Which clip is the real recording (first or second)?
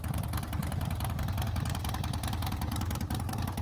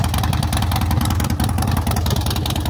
second